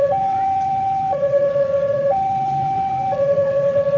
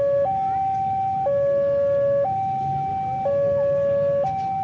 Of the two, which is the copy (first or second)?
first